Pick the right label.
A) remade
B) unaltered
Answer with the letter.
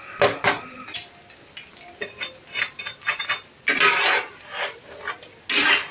B